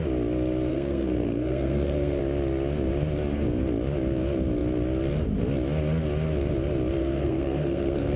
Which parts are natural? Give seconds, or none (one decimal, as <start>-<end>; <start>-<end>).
0.0-0.7; 2.2-7.0